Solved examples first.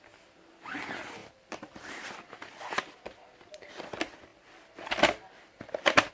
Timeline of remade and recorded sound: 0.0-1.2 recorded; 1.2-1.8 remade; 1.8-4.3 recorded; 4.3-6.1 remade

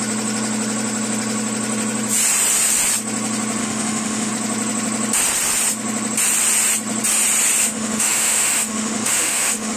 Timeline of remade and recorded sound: 0.0-3.6 recorded; 3.6-4.3 remade; 4.3-7.6 recorded; 7.6-9.8 remade

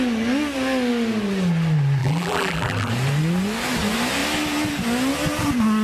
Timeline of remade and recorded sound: 0.0-2.0 recorded; 2.0-2.9 remade; 2.9-5.8 recorded

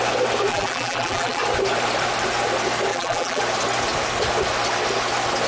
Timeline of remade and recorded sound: 0.0-0.5 recorded; 0.5-1.4 remade; 1.4-2.9 recorded; 2.9-3.4 remade; 3.4-5.5 recorded

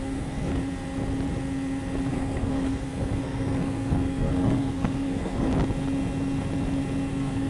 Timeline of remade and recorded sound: 0.0-0.5 remade; 0.5-2.1 recorded; 2.1-5.5 remade; 5.5-7.1 recorded; 7.1-7.5 remade

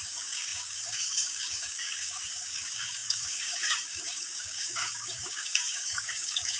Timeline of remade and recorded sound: 0.0-6.6 remade

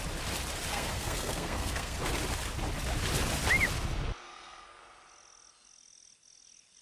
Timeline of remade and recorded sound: 0.0-0.7 recorded; 0.7-2.0 remade; 2.0-4.2 recorded; 4.2-4.8 remade; 4.8-6.8 recorded